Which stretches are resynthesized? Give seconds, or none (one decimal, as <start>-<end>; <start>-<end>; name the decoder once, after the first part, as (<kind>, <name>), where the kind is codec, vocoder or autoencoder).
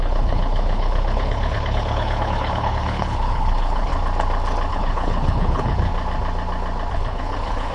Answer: 0.0-3.9 (codec, HILCodec); 4.7-5.9; 6.9-7.7